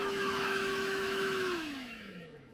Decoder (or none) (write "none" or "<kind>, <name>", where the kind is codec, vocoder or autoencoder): autoencoder, DAC-VAE